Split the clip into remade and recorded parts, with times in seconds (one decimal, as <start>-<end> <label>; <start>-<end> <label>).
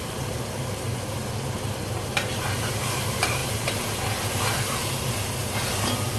0.0-1.2 remade; 1.2-1.8 recorded; 1.8-3.4 remade; 3.4-4.5 recorded; 4.5-6.2 remade